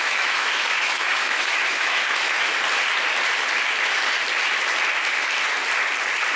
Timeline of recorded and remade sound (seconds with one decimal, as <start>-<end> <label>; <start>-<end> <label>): 0.0-2.5 remade; 2.5-6.3 recorded